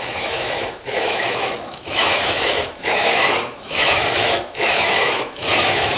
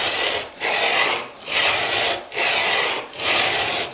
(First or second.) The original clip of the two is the second